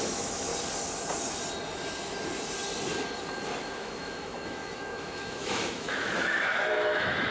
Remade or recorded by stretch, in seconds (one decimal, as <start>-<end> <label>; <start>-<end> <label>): 0.0-0.5 remade; 0.5-3.6 recorded; 3.6-7.3 remade